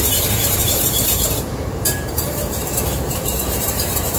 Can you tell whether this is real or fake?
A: fake